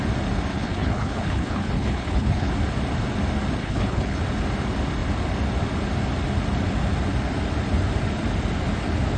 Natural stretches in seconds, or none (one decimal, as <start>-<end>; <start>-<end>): 0.0-0.5; 2.5-3.6; 4.2-9.2